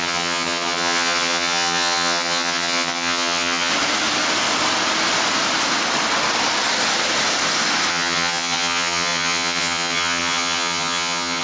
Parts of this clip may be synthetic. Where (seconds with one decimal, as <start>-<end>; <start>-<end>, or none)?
0.0-3.7; 7.9-11.4